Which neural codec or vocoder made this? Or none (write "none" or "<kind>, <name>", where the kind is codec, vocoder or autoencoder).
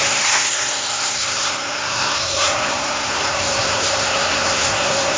codec, SNAC